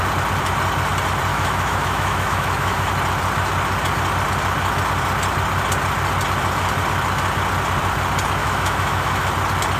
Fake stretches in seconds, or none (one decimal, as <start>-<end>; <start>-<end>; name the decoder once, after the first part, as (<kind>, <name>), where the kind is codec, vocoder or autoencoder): 1.3-2.9 (autoencoder, DAC-VAE); 8.4-9.3